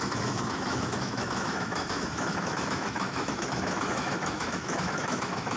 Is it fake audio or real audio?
fake